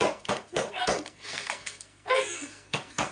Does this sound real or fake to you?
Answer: fake